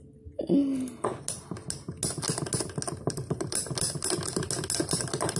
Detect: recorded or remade recorded